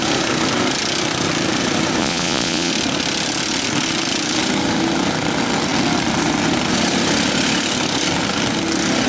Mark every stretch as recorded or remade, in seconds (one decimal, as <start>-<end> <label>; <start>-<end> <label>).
0.0-2.0 recorded; 2.0-2.7 remade; 2.7-9.1 recorded